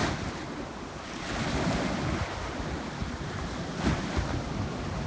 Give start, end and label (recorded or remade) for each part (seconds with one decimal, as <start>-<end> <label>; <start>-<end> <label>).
0.0-5.1 recorded

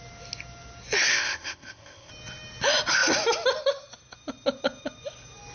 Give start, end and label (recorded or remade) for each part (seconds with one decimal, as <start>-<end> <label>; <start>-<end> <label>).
0.0-1.1 recorded; 1.1-2.1 remade; 2.1-5.5 recorded

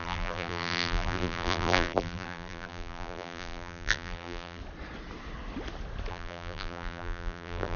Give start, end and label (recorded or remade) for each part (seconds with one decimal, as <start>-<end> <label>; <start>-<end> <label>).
0.0-4.6 remade; 4.6-6.1 recorded; 6.1-7.8 remade

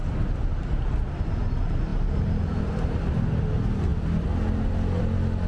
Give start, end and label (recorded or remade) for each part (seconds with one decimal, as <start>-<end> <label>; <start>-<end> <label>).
0.0-5.5 recorded